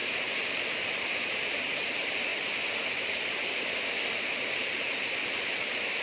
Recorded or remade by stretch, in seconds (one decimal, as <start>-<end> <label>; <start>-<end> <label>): 0.0-2.3 remade; 2.3-4.2 recorded; 4.2-6.0 remade